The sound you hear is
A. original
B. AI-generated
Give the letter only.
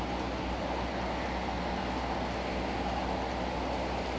A